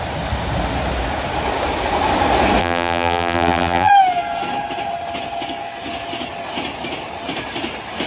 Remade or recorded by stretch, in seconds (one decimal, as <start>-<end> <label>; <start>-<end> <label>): 0.0-2.6 recorded; 2.6-3.9 remade; 3.9-8.1 recorded